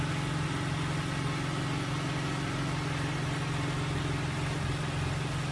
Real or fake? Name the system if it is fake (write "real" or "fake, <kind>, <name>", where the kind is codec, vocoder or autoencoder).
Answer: real